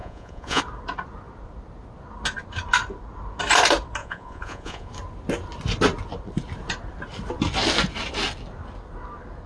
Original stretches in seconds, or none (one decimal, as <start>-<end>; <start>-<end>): 0.6-4.0; 4.9-9.5

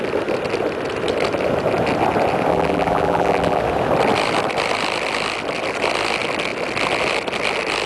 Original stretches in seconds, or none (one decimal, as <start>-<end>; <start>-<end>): 0.0-2.5; 3.6-7.9

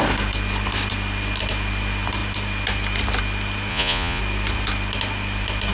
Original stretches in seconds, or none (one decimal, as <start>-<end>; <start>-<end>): 0.0-3.7; 4.2-5.7

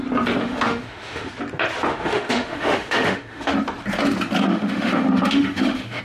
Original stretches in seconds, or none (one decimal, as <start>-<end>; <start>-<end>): 0.0-0.4; 1.3-1.9; 3.5-4.5

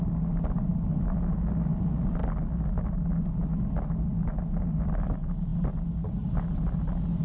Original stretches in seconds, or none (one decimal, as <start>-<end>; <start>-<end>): 0.0-7.2